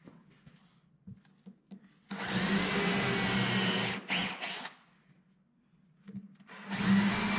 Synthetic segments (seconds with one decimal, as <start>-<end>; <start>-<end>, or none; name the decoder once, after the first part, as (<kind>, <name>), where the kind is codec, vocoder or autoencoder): none